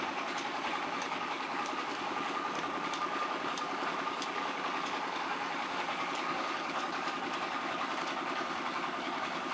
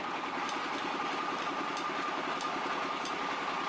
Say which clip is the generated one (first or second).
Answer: first